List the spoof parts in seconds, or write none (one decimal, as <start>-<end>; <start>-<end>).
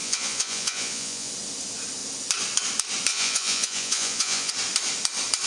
0.0-1.3; 3.1-4.5